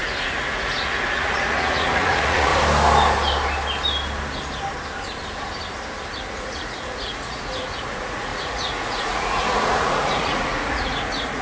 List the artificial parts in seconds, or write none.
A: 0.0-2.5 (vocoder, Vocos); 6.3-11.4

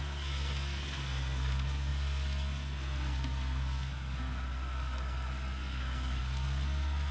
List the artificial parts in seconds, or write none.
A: 0.0-7.1 (codec, SNAC)

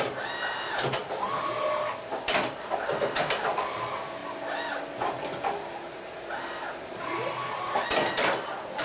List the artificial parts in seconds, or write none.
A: none

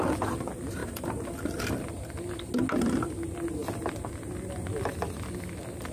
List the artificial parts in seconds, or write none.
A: none

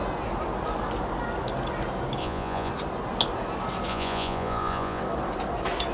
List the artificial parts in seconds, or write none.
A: 2.2-2.7 (vocoder, Vocos); 3.9-5.0

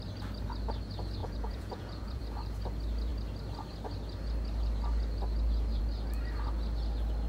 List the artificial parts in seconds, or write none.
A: 1.2-2.2 (vocoder, Vocos)

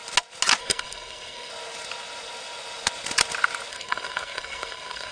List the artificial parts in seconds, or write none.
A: 0.6-1.5 (codec, SNAC); 3.7-5.1

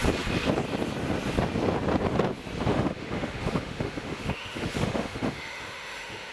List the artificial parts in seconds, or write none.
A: 2.7-6.3 (autoencoder, DAC-VAE)